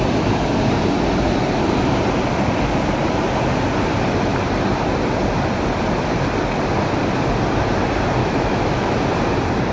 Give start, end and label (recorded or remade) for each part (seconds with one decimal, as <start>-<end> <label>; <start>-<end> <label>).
0.0-8.2 recorded; 8.2-8.9 remade; 8.9-9.7 recorded